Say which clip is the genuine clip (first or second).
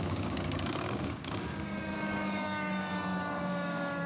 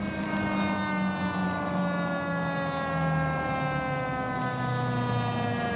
second